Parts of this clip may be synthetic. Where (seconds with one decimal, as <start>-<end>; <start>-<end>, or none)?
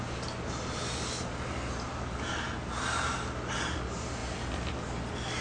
none